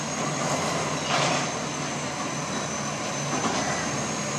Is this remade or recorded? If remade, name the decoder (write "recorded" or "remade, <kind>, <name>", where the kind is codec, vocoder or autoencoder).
remade, vocoder, BigVGAN v2